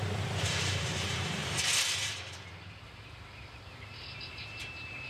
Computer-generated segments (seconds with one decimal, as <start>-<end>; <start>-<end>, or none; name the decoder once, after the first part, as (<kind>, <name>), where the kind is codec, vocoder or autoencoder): 0.0-1.4 (vocoder, BigVGAN v2); 4.1-5.1

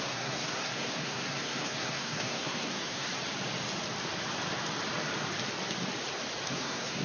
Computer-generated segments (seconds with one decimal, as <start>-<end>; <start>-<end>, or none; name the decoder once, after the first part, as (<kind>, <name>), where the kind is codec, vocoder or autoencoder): 0.0-3.1 (codec, SNAC); 6.5-7.0

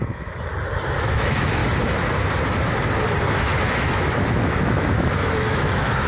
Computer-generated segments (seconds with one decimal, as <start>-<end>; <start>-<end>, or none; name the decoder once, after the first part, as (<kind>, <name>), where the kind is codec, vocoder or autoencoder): 0.0-0.5 (autoencoder, DAC-VAE); 1.0-1.6; 3.3-6.1

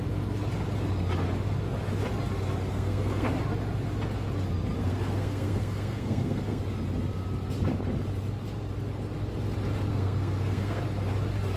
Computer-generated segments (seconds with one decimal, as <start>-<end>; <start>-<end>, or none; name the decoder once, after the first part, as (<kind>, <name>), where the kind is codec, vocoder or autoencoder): 2.7-3.3 (codec, SNAC); 4.8-6.6; 9.9-10.8

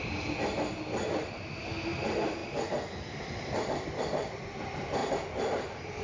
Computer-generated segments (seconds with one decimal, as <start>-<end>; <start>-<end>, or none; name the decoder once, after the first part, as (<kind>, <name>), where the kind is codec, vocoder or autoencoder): none

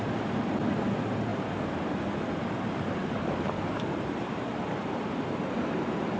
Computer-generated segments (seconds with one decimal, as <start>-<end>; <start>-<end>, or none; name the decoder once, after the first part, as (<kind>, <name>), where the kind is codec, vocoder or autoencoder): 3.0-4.5 (vocoder, BigVGAN v2)